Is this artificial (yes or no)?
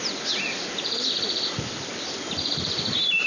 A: no